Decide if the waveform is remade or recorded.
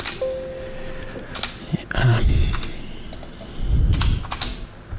recorded